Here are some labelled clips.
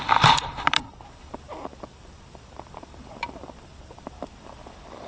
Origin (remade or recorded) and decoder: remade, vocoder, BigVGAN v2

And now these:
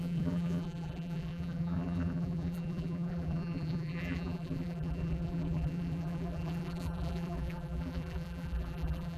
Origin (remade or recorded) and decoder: remade, vocoder, BigVGAN v2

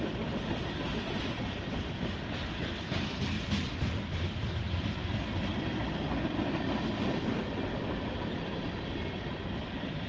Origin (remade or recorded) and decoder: recorded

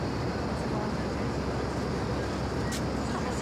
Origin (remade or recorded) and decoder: recorded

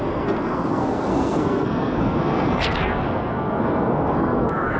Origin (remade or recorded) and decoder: remade, codec, SNAC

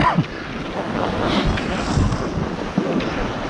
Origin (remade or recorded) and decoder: recorded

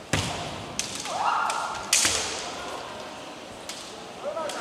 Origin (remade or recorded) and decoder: recorded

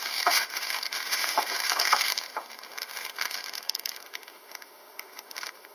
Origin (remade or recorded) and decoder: remade, autoencoder, DAC-VAE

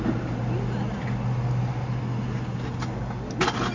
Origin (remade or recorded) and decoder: recorded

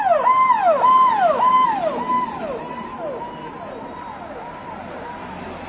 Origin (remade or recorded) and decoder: recorded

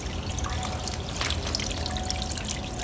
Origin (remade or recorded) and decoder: recorded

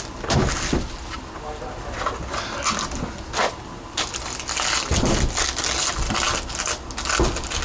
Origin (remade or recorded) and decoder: recorded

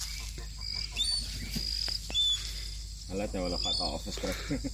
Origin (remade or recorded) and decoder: recorded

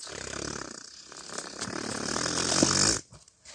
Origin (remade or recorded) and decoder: recorded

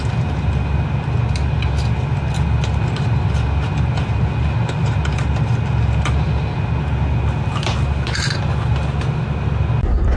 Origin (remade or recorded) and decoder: recorded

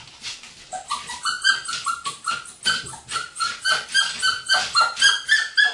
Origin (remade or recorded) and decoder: recorded